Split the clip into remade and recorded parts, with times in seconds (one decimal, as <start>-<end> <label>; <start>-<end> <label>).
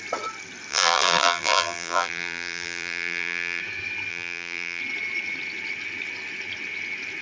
0.0-0.7 recorded; 0.7-3.6 remade; 3.6-4.1 recorded; 4.1-4.8 remade; 4.8-7.2 recorded